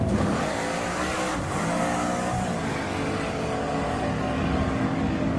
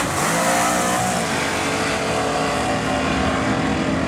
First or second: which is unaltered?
second